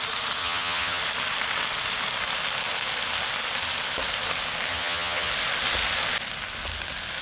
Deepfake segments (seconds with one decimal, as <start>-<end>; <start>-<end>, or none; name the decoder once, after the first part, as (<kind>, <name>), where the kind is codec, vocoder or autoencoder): 0.4-1.0 (vocoder, HiFi-GAN); 4.7-5.3